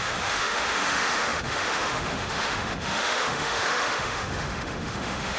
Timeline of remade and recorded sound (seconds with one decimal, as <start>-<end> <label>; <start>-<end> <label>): 0.0-5.4 remade